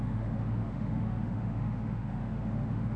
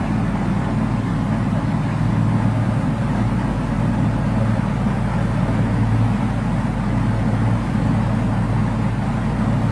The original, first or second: second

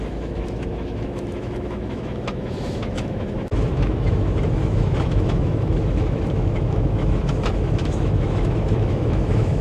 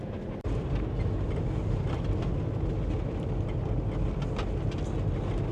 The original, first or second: second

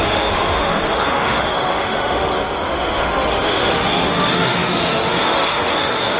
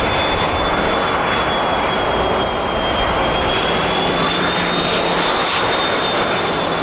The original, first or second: second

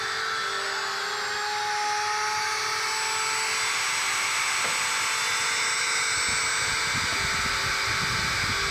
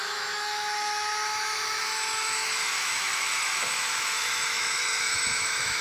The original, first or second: first